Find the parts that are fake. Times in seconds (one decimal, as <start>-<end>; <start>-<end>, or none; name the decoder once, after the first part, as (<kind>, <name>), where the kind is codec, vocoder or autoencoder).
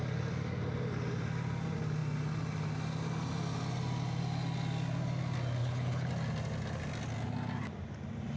5.6-6.1 (codec, HILCodec)